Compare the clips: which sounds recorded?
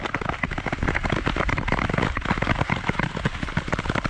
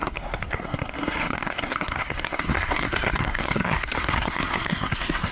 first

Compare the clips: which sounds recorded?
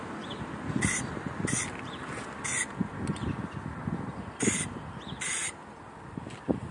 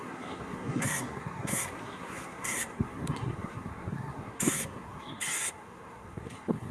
first